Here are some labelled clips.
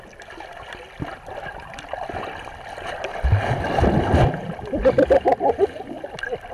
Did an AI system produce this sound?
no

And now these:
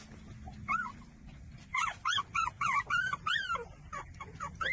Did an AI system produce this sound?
no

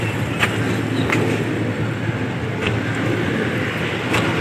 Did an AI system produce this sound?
no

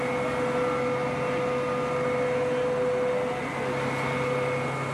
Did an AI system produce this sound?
no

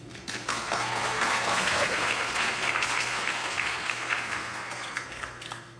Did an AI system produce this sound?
yes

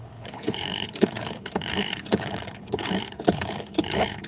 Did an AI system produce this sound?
yes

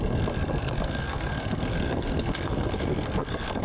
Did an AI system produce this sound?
yes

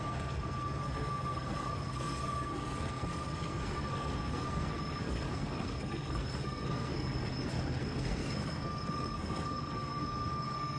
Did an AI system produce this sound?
yes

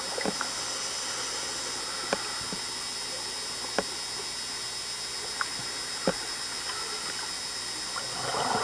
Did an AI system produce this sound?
no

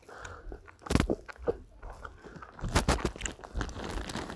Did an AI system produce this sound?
no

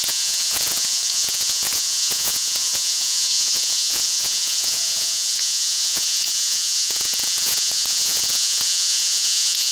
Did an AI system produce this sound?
yes